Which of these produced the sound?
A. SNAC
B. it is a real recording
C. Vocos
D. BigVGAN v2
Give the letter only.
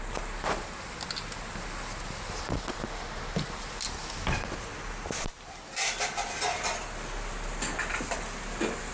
B